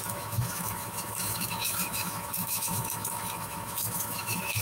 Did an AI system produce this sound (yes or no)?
yes